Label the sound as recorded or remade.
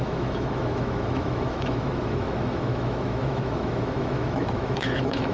remade